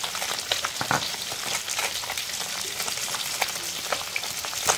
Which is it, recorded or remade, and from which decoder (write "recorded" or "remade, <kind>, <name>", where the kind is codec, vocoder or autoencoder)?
recorded